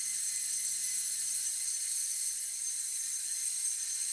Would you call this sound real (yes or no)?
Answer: yes